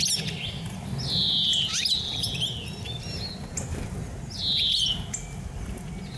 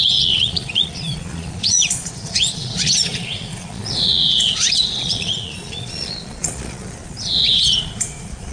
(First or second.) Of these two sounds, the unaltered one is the first